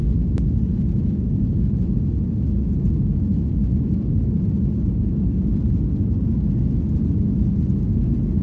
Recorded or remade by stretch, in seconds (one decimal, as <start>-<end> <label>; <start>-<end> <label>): 0.0-8.4 recorded